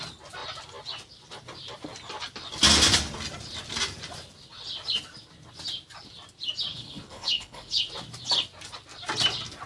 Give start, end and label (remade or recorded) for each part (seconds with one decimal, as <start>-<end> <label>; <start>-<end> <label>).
0.0-6.7 recorded; 6.7-7.8 remade; 7.8-9.7 recorded